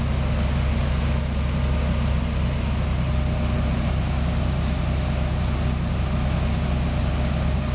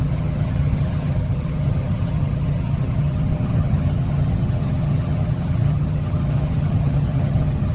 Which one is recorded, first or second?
first